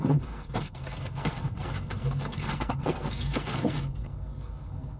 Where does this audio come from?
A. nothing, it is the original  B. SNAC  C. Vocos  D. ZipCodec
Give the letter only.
B